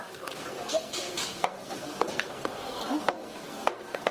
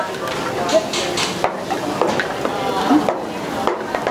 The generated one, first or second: first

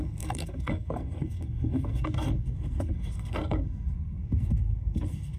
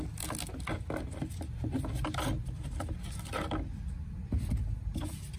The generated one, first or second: first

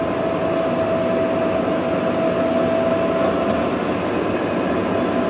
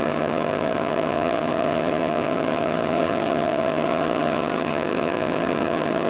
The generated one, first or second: second